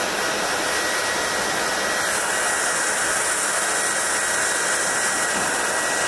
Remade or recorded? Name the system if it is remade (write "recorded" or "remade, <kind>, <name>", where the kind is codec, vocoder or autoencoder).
recorded